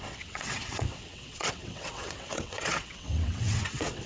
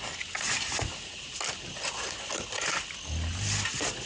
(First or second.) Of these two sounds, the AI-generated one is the first